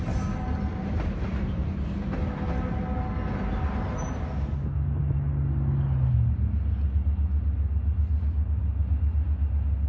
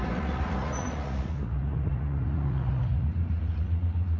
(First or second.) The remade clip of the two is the second